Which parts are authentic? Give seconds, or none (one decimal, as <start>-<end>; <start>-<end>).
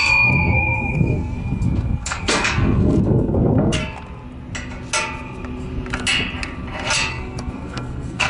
3.8-7.1